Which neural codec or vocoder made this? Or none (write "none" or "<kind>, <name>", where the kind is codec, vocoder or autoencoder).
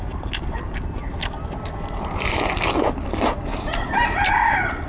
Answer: none